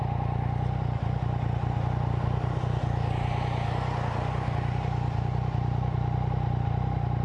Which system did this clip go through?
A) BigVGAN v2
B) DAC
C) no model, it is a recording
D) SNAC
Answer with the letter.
C